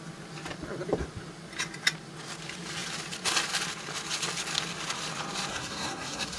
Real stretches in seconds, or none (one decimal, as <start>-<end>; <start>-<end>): 0.0-5.5